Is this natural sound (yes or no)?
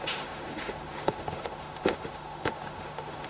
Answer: no